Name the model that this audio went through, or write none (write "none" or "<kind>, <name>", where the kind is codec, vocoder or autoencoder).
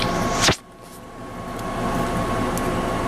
none